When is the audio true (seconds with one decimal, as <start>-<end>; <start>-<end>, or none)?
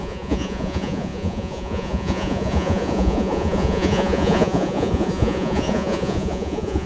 none